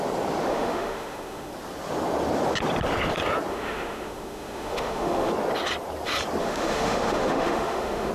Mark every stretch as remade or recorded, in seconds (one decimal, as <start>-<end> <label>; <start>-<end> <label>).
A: 0.0-0.5 recorded; 0.5-1.5 remade; 1.5-3.5 recorded; 3.5-5.3 remade; 5.3-6.4 recorded; 6.4-8.1 remade